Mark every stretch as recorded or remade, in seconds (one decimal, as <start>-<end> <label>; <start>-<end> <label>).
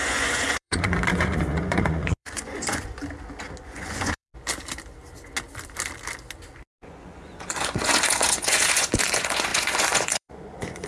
0.0-3.0 remade; 3.0-3.6 recorded; 3.6-4.3 remade; 4.3-6.5 recorded; 6.5-10.9 remade